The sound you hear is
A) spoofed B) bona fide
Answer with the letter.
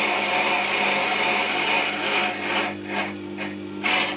B